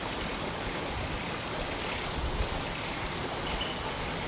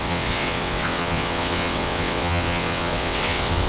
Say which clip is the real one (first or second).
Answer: first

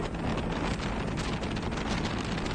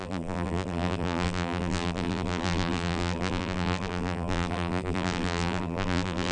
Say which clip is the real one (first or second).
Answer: first